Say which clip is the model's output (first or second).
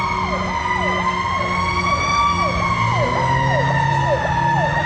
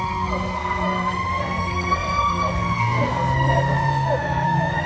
second